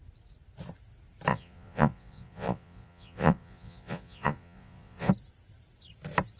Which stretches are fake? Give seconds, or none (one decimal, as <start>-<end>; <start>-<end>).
1.3-5.1